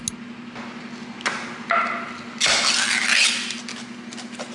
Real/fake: real